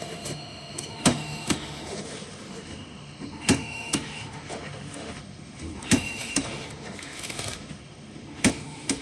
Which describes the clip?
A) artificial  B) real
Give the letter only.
A